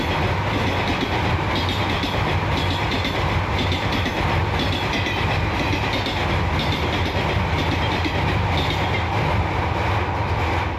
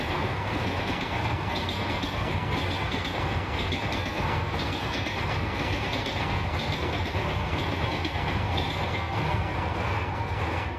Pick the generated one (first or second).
second